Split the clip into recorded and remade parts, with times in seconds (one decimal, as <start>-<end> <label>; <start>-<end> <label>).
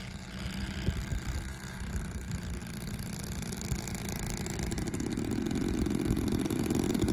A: 0.0-7.1 recorded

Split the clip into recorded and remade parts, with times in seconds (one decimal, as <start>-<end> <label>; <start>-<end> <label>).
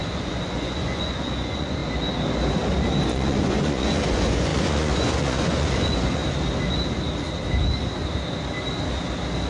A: 0.0-1.8 remade; 1.8-3.1 recorded; 3.1-6.2 remade; 6.2-9.5 recorded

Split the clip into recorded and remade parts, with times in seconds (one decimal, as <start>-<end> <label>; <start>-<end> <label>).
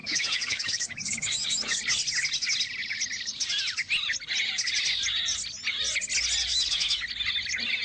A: 0.0-1.8 remade; 1.8-6.5 recorded; 6.5-7.0 remade; 7.0-7.8 recorded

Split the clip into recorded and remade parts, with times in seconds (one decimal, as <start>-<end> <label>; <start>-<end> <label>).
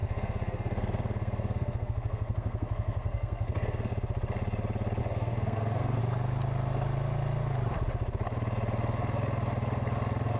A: 0.0-3.9 remade; 3.9-5.0 recorded; 5.0-6.0 remade; 6.0-10.4 recorded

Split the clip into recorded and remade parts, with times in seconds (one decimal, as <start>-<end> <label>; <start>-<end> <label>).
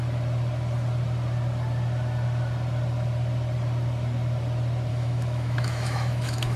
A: 0.0-4.9 recorded; 4.9-6.6 remade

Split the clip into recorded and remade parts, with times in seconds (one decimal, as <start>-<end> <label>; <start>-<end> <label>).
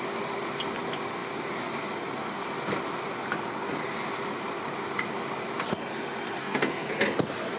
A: 0.0-6.4 recorded; 6.4-6.9 remade; 6.9-7.6 recorded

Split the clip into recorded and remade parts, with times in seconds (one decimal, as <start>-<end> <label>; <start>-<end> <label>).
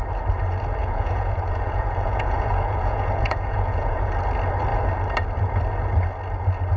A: 0.0-0.8 recorded; 0.8-4.1 remade; 4.1-6.8 recorded